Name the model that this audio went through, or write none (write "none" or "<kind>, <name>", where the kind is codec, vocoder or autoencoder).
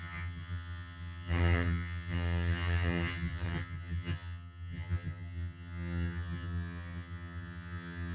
vocoder, HiFi-GAN